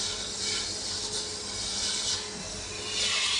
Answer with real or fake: real